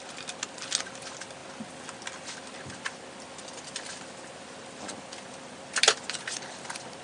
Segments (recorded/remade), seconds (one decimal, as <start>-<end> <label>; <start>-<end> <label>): 0.0-7.0 recorded